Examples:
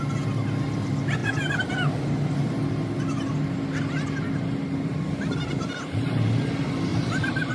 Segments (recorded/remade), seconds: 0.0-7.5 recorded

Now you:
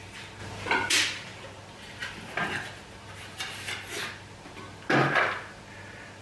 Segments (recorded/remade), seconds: 0.0-6.2 recorded